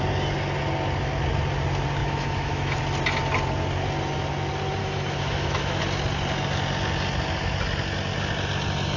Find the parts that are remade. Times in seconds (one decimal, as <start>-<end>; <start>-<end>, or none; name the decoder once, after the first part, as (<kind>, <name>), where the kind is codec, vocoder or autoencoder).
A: 2.0-2.8 (autoencoder, DAC-VAE); 4.8-5.8